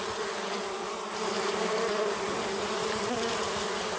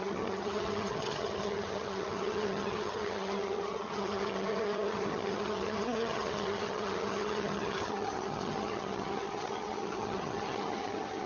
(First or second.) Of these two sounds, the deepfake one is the second